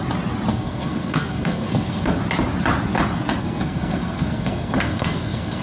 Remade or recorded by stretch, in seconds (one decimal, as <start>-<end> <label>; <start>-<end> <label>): 0.0-0.5 recorded; 0.5-2.2 remade; 2.2-3.4 recorded; 3.4-5.6 remade